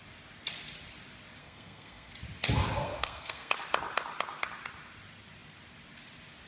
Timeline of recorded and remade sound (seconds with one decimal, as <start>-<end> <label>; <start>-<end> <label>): 0.0-1.4 recorded; 1.4-2.1 remade; 2.1-2.8 recorded; 2.8-3.5 remade; 3.5-6.5 recorded